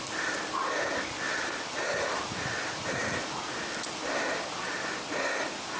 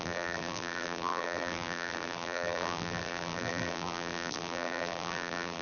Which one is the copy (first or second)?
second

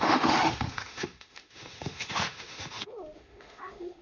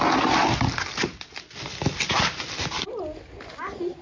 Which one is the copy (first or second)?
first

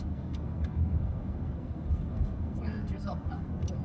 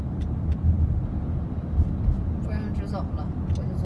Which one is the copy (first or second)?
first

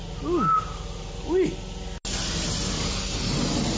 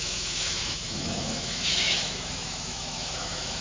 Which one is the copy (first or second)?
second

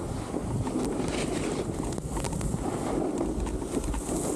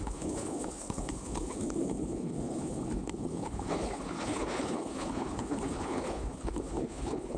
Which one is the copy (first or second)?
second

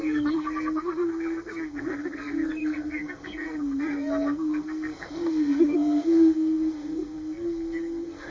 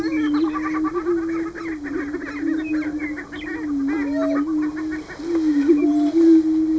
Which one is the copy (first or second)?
first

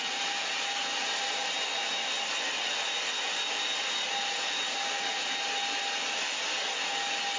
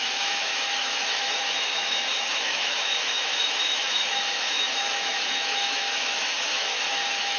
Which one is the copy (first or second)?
second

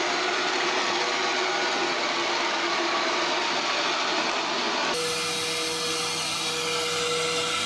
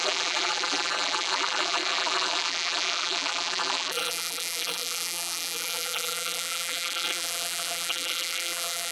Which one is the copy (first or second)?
second